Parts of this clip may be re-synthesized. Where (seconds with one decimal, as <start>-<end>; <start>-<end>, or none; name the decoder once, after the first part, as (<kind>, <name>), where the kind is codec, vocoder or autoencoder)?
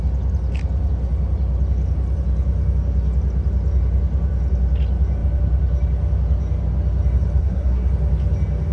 7.4-7.9 (codec, SNAC)